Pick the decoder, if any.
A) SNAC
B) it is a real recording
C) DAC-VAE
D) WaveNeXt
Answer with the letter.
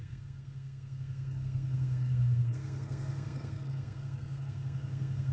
A